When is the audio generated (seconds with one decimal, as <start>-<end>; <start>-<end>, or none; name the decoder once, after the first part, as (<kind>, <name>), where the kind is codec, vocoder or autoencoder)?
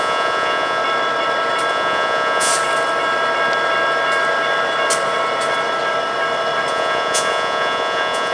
0.0-0.8 (vocoder, Vocos); 1.7-2.5; 6.7-8.3